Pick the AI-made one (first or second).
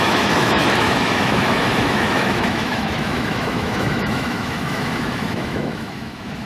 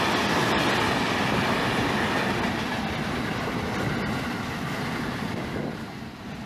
first